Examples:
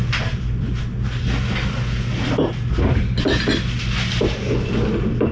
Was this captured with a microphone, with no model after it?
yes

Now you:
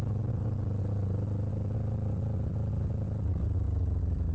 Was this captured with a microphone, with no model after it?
yes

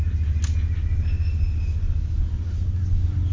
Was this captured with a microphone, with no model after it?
yes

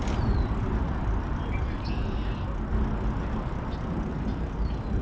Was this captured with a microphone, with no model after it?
yes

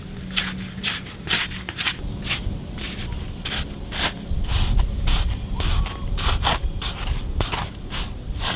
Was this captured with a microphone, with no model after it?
yes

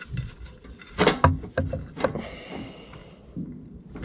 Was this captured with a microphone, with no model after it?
yes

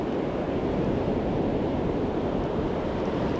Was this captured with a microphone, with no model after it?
yes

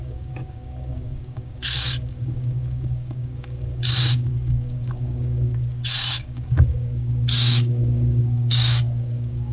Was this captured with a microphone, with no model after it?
no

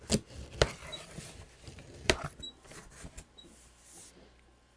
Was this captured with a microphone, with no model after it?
yes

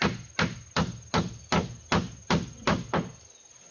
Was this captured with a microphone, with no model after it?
yes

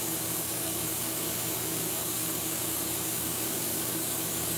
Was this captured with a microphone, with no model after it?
no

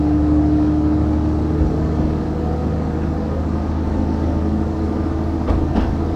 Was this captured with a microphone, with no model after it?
no